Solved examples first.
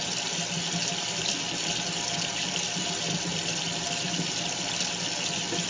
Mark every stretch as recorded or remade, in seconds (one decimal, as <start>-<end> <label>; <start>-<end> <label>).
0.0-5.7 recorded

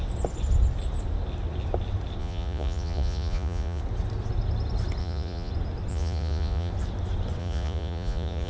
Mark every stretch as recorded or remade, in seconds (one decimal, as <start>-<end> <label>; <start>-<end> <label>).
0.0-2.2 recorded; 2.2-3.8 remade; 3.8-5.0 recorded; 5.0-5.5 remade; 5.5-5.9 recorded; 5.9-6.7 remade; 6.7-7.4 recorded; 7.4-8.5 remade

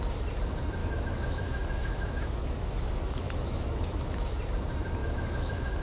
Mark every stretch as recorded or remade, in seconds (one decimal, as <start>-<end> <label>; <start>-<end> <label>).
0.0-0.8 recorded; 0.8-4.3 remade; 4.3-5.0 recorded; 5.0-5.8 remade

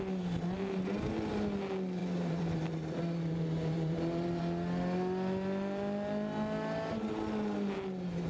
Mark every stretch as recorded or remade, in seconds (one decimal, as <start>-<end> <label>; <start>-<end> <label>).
0.0-2.0 recorded; 2.0-4.4 remade; 4.4-8.3 recorded